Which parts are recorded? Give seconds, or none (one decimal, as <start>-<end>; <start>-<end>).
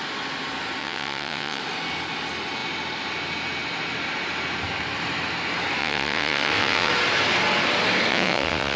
0.0-0.8; 1.6-5.8; 6.9-8.1